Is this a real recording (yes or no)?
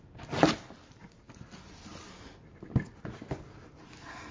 yes